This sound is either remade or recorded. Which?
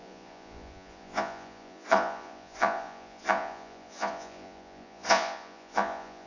remade